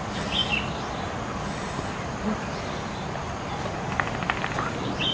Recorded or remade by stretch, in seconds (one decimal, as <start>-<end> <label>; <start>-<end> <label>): 0.0-5.1 recorded